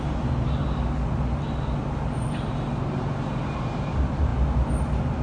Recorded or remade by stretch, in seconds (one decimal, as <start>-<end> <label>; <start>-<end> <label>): 0.0-0.6 remade; 0.6-2.3 recorded; 2.3-4.3 remade; 4.3-4.8 recorded; 4.8-5.2 remade